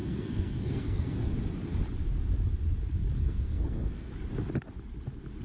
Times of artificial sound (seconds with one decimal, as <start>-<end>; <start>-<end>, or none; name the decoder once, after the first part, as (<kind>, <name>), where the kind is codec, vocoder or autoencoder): 0.0-1.3 (codec, SNAC); 3.2-4.1